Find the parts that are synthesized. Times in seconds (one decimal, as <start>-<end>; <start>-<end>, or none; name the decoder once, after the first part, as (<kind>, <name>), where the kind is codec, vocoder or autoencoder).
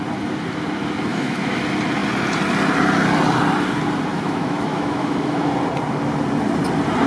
1.1-1.6 (autoencoder, DAC-VAE); 4.1-5.5